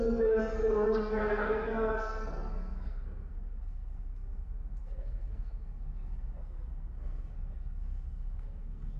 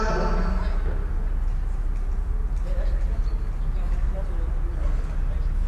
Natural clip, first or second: second